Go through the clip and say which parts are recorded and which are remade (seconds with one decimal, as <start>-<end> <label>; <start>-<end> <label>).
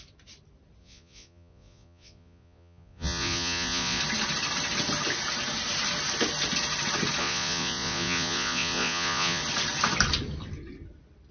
0.0-0.8 recorded; 0.8-4.0 remade; 4.0-7.2 recorded; 7.2-9.4 remade; 9.4-11.3 recorded